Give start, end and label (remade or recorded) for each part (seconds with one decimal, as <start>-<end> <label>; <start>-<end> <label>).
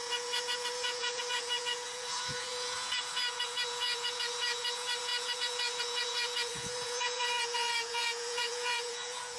0.0-9.4 remade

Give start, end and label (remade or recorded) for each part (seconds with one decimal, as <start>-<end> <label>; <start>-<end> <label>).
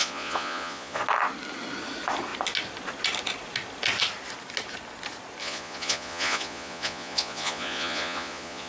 0.0-1.0 remade; 1.0-5.4 recorded; 5.4-8.7 remade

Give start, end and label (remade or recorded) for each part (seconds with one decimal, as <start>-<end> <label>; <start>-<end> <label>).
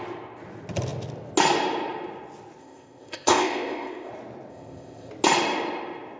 0.0-2.6 recorded; 2.6-4.1 remade; 4.1-4.5 recorded; 4.5-5.1 remade; 5.1-6.2 recorded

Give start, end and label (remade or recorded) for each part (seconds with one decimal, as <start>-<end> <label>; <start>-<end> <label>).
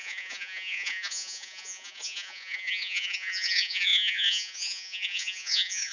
0.0-5.9 remade